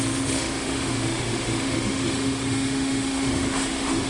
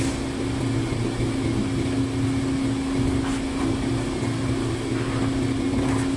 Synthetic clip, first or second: first